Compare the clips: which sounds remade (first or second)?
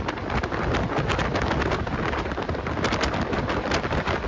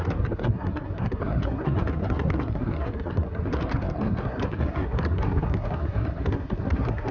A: second